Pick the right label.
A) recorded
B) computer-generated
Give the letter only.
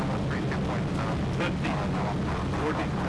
A